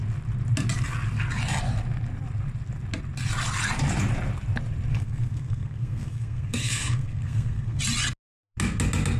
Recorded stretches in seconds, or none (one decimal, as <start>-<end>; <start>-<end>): 0.0-4.9; 7.8-9.2